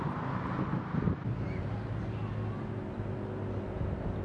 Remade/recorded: recorded